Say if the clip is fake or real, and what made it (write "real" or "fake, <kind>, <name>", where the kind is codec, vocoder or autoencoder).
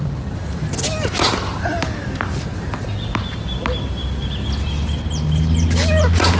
real